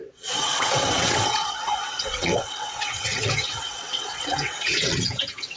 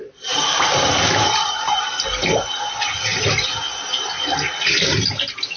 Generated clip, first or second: first